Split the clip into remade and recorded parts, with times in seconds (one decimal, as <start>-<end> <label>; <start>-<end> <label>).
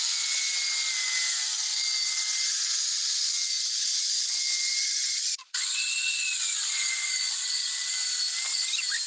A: 0.0-4.8 recorded; 4.8-7.9 remade; 7.9-9.1 recorded